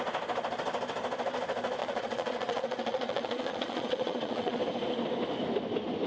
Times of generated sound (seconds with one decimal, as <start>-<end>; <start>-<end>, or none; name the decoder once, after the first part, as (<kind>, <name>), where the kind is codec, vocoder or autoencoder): 1.8-4.6 (vocoder, Vocos)